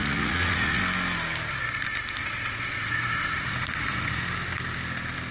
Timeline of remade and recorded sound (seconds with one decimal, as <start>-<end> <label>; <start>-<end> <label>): 0.0-0.8 remade; 0.8-2.2 recorded; 2.2-4.2 remade; 4.2-5.3 recorded